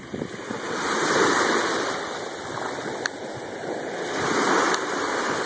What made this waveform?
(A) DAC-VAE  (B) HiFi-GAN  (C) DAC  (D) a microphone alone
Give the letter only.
D